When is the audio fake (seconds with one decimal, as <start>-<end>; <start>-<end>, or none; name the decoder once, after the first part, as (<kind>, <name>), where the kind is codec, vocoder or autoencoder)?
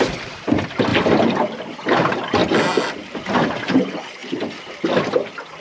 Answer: none